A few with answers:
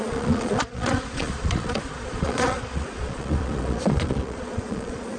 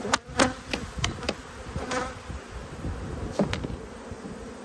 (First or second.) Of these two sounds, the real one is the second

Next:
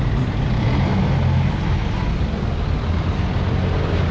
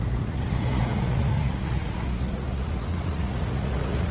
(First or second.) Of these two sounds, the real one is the first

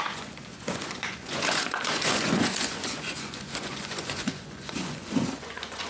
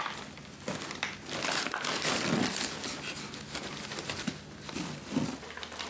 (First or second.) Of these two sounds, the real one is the second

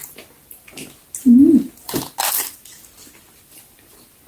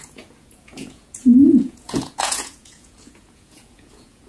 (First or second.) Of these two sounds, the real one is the first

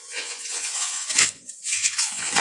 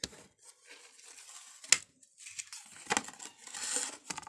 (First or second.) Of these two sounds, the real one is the second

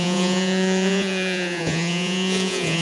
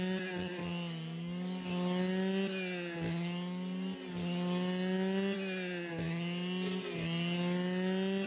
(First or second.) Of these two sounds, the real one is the second